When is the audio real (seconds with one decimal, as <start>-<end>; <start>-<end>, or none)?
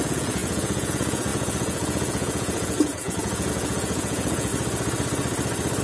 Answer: 4.5-5.8